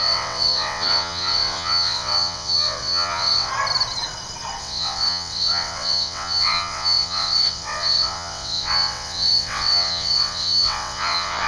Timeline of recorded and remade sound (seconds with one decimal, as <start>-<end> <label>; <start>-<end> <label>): 0.0-3.5 remade; 3.5-4.6 recorded; 4.6-11.5 remade